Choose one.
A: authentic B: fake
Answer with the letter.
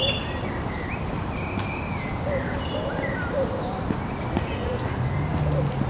A